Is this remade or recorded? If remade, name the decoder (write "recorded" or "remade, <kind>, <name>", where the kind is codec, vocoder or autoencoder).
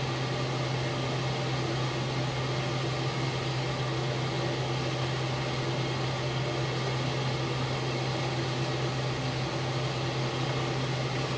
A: recorded